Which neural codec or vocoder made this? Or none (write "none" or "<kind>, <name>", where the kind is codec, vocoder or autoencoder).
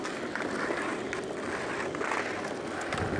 none